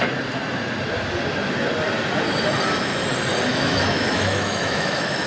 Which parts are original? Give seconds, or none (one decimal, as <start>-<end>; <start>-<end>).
0.0-3.5

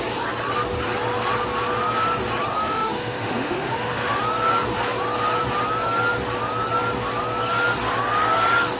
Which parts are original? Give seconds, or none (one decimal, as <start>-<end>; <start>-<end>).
0.0-2.5; 4.2-8.8

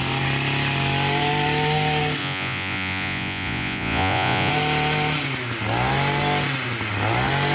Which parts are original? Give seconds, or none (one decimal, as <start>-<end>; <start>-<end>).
0.0-2.2; 4.5-7.5

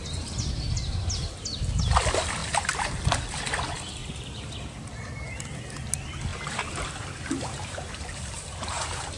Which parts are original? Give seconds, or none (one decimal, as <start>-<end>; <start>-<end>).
0.0-2.4; 3.0-4.0; 4.5-6.3

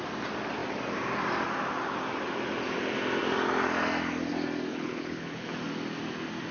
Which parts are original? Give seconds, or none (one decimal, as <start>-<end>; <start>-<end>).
0.0-4.7; 5.6-6.5

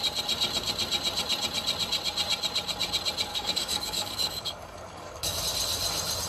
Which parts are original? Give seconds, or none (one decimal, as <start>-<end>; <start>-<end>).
0.0-3.3; 5.4-6.3

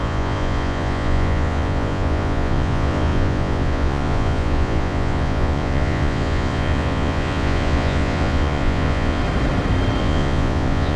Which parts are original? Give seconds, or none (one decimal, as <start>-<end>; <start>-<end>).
9.2-10.0